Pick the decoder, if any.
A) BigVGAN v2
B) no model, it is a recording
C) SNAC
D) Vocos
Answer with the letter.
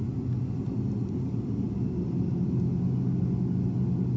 B